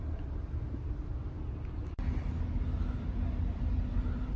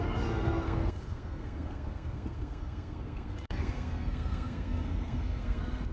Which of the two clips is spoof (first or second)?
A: second